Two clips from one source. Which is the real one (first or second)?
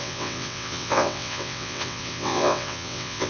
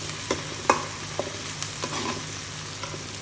second